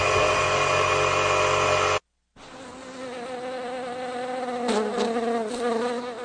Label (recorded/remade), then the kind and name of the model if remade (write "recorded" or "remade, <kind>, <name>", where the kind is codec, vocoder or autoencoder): recorded